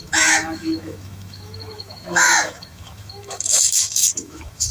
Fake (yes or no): yes